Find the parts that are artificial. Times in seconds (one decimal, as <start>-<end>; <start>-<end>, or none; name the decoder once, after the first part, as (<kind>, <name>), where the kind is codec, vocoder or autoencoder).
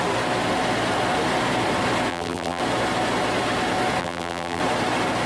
2.1-2.6 (vocoder, BigVGAN v2); 4.0-4.6